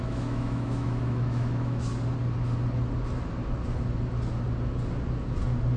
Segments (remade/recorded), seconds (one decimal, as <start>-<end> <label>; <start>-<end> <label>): 0.0-1.9 remade; 1.9-5.8 recorded